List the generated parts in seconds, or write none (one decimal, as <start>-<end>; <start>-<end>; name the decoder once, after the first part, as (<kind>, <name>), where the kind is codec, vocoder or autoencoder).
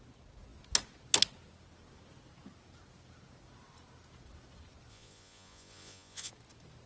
4.9-6.3 (vocoder, Vocos)